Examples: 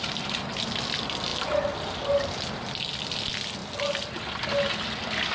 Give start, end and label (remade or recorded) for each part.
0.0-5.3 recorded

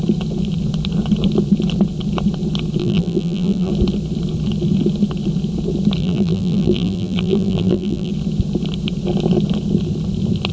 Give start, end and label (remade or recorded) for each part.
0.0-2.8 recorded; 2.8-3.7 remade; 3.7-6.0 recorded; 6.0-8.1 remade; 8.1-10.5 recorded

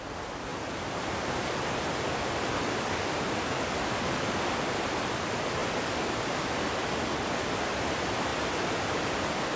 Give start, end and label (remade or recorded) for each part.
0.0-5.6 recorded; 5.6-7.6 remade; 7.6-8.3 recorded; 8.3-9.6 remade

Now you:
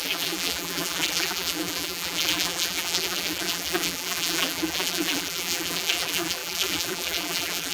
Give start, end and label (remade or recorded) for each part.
0.0-7.7 remade

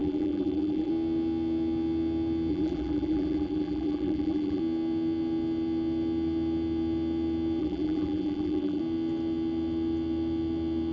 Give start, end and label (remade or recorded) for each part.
0.0-0.9 remade; 0.9-2.5 recorded; 2.5-4.6 remade; 4.6-7.6 recorded; 7.6-8.8 remade; 8.8-10.9 recorded